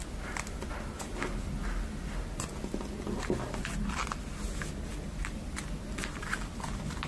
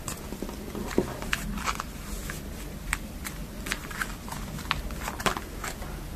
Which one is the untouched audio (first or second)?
first